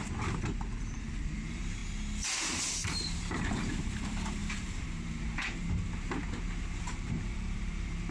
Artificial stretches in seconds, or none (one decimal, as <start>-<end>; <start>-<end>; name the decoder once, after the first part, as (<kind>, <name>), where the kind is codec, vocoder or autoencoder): 0.0-1.8 (vocoder, BigVGAN v2); 2.6-8.1